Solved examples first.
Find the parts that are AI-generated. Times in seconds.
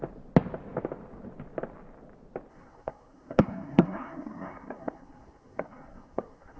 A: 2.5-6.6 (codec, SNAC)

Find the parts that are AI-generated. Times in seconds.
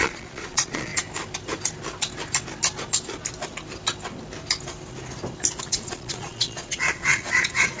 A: 0.0-0.9 (vocoder, Vocos); 5.6-7.8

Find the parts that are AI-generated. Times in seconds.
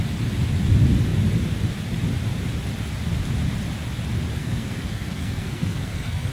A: 4.4-6.3 (codec, SNAC)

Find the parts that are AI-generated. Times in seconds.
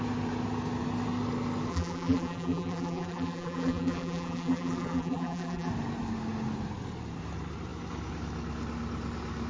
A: 1.7-5.7 (vocoder, BigVGAN v2)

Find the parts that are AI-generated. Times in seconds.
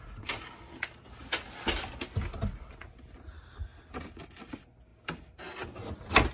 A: none